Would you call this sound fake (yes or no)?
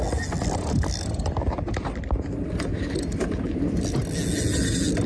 no